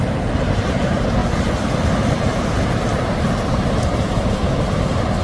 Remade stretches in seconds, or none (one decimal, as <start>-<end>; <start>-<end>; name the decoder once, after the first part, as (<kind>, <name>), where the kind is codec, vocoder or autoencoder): 0.0-5.2 (vocoder, BigVGAN v2)